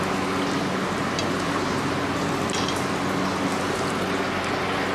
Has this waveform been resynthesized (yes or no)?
no